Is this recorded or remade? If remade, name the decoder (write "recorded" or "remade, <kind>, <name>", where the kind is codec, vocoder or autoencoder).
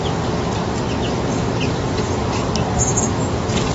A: recorded